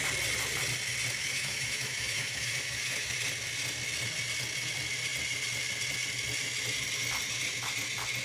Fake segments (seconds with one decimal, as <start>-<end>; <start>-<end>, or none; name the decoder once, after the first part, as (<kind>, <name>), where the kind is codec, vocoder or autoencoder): 1.2-3.1 (autoencoder, DAC-VAE)

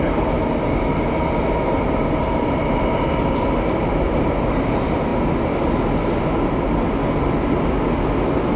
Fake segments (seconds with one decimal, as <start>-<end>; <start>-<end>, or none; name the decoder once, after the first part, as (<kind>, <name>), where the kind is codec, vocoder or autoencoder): none

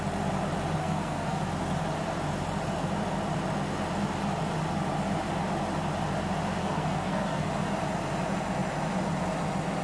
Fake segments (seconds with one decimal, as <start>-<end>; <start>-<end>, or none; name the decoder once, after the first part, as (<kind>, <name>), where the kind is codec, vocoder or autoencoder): 0.8-1.4 (codec, SNAC); 6.6-7.5

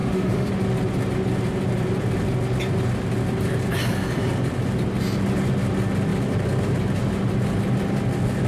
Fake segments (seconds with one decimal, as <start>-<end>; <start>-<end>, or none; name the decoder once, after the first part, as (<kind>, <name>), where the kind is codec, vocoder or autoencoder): 0.0-0.5 (autoencoder, DAC-VAE)

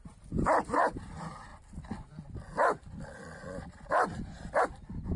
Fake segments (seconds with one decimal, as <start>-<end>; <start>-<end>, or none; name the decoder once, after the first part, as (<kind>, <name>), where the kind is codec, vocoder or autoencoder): none

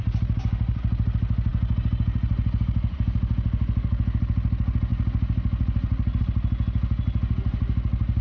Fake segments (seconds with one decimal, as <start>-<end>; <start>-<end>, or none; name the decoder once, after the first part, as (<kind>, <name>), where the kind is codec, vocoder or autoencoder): none

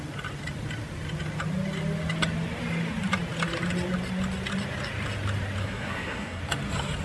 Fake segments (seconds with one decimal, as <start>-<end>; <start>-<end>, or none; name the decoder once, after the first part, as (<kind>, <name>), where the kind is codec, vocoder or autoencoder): 5.6-6.4 (codec, SNAC)